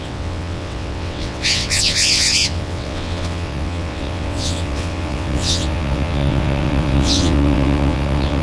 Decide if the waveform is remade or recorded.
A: remade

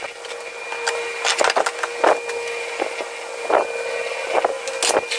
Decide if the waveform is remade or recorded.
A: recorded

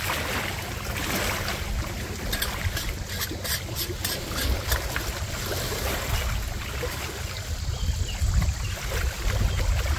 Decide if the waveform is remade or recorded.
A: recorded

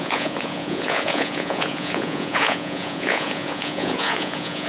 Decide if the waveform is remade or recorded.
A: remade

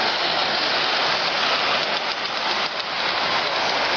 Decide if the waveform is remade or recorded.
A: recorded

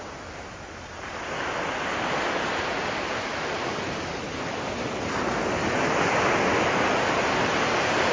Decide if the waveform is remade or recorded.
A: recorded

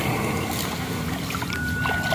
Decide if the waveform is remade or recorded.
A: recorded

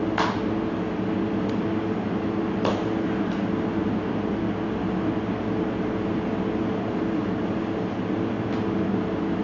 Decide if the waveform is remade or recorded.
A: recorded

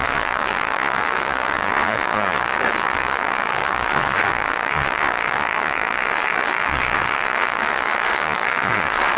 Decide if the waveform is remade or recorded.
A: remade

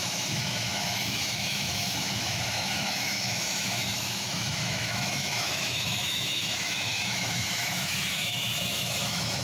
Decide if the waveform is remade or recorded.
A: remade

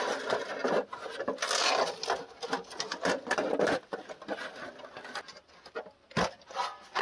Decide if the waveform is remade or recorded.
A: recorded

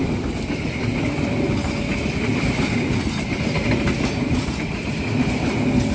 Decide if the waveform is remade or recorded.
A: recorded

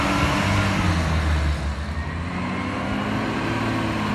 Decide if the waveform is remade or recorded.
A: recorded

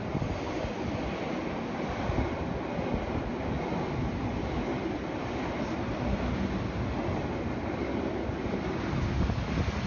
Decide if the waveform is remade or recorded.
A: recorded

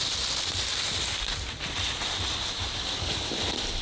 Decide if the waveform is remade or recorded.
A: recorded